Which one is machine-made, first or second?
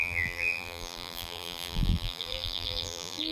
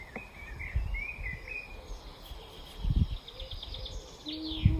first